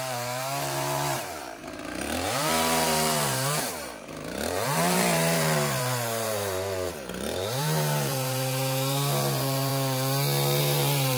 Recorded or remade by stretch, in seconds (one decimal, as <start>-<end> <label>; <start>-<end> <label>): 0.0-9.7 remade; 9.7-10.6 recorded; 10.6-11.2 remade